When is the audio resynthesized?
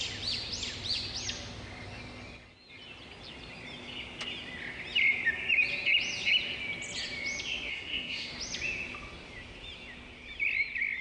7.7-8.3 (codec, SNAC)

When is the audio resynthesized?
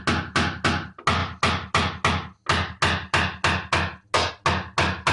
none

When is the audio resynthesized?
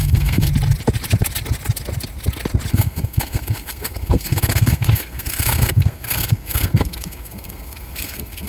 0.0-0.5 (codec, SNAC); 2.7-8.5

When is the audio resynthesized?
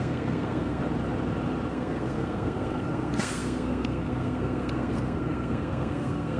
0.0-0.8 (codec, SNAC); 1.7-6.4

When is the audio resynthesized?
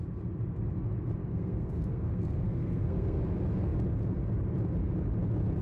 1.2-3.2 (codec, SNAC)